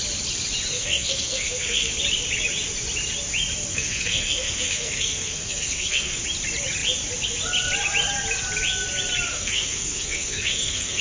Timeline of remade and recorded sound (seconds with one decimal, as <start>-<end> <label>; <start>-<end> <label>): 0.0-0.7 recorded; 0.7-1.9 remade; 1.9-3.7 recorded; 3.7-6.2 remade; 6.2-9.3 recorded; 9.3-11.0 remade

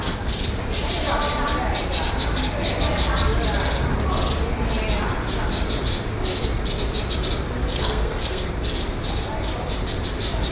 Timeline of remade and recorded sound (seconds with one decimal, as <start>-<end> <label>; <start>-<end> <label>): 0.0-7.7 recorded; 7.7-8.5 remade; 8.5-10.5 recorded

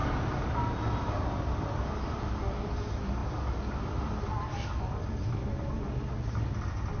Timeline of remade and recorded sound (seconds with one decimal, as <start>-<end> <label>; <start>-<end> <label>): 0.0-7.0 recorded

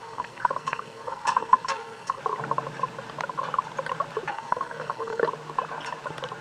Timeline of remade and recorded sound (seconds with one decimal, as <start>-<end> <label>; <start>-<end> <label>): 0.0-2.2 remade; 2.2-4.3 recorded; 4.3-5.2 remade; 5.2-6.4 recorded